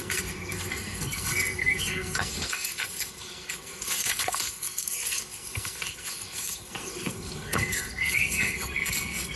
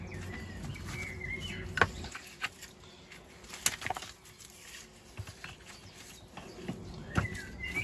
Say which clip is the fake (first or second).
first